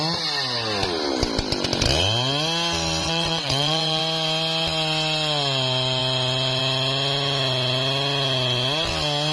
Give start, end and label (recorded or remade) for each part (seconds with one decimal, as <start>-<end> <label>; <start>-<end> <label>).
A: 0.0-3.0 recorded; 3.0-4.0 remade; 4.0-9.3 recorded